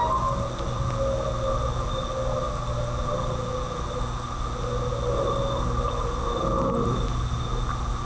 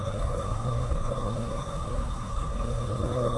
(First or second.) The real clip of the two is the first